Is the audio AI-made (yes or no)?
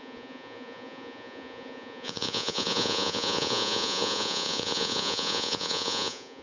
yes